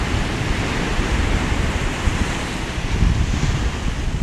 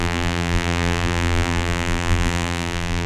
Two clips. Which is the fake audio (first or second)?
second